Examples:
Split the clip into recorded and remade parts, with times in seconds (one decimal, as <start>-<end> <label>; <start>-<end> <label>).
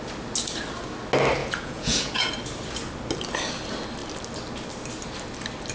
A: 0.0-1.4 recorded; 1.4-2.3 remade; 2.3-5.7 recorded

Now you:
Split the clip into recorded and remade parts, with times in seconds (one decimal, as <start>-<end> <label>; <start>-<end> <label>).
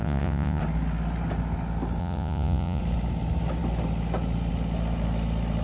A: 0.0-0.6 remade; 0.6-2.0 recorded; 2.0-2.8 remade; 2.8-5.6 recorded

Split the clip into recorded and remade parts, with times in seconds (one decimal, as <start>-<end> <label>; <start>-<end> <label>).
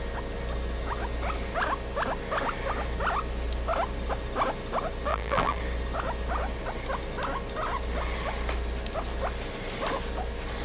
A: 0.0-5.1 recorded; 5.1-5.6 remade; 5.6-10.6 recorded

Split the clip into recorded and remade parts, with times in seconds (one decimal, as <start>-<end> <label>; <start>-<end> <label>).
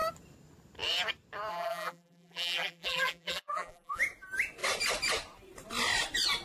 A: 0.0-1.5 recorded; 1.5-4.0 remade; 4.0-6.4 recorded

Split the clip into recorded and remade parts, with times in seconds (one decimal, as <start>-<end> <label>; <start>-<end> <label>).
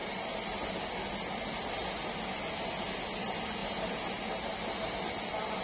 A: 0.0-5.6 recorded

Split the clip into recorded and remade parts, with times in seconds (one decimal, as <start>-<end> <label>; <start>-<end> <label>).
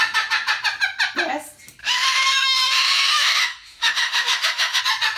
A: 0.0-1.8 recorded; 1.8-4.8 remade; 4.8-5.2 recorded